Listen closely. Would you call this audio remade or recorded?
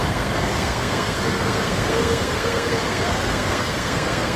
remade